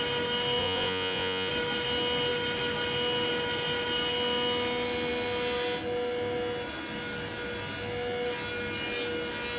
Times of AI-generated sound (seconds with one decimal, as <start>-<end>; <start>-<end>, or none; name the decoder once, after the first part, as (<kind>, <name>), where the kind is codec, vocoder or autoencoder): 0.6-1.5 (vocoder, Vocos)